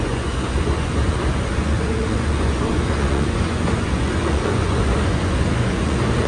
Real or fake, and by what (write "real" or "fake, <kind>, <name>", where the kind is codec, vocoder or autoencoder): fake, vocoder, Vocos